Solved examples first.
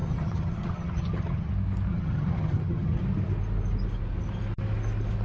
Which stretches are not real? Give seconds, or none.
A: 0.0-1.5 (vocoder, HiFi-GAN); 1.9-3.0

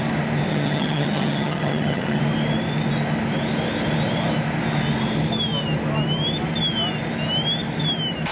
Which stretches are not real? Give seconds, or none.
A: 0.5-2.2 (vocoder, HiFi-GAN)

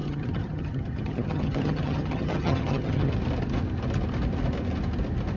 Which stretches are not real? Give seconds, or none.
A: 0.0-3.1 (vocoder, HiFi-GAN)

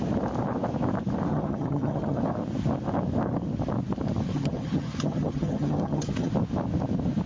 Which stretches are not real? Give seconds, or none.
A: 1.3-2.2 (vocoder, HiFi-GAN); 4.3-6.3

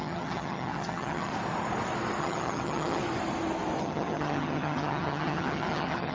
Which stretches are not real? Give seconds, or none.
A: 0.0-1.3 (vocoder, HiFi-GAN); 2.2-3.0; 3.8-6.1

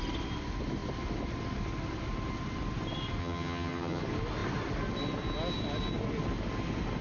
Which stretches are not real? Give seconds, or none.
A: 3.2-4.0 (vocoder, HiFi-GAN)